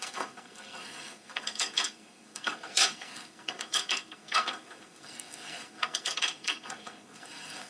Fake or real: fake